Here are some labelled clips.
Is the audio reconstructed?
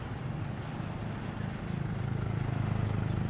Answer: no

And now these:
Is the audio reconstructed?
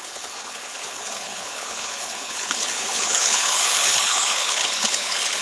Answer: yes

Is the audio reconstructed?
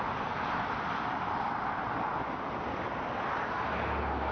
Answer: no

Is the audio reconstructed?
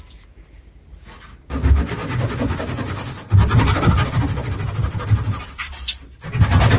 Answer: no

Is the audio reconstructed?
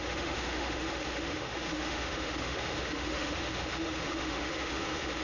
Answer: yes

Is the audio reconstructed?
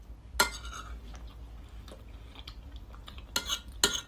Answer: no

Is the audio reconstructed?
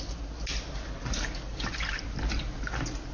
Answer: no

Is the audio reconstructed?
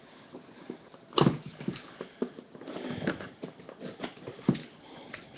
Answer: no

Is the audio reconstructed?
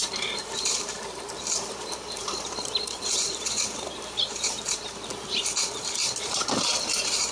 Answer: yes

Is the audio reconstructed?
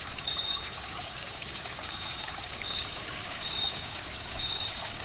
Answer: yes